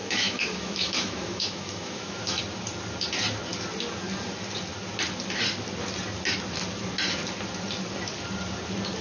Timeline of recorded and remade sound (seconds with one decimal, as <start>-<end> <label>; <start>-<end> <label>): 0.0-2.4 remade; 2.4-9.0 recorded